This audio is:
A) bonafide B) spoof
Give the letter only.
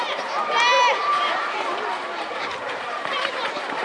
B